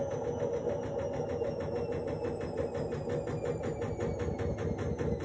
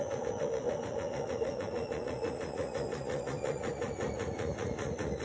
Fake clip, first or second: second